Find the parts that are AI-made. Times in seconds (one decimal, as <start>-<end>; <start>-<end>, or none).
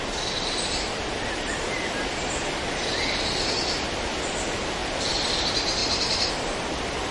4.8-5.3